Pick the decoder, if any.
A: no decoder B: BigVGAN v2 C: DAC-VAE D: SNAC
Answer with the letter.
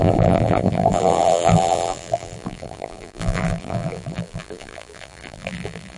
B